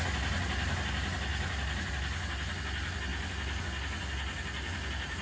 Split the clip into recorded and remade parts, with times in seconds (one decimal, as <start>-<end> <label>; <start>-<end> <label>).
0.0-5.2 recorded